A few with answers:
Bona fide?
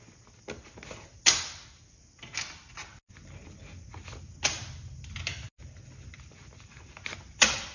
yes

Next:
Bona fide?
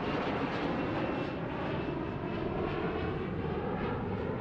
yes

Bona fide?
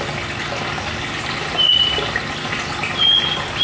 yes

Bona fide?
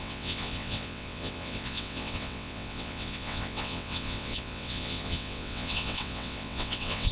no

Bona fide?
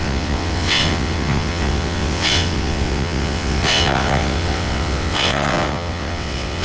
no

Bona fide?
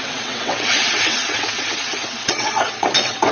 no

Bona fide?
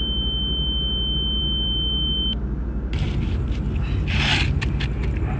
yes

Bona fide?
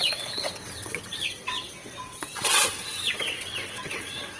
no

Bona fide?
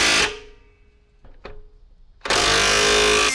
yes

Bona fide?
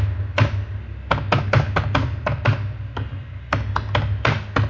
yes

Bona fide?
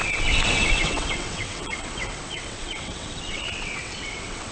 no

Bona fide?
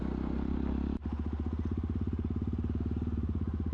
yes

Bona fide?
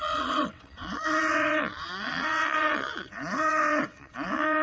no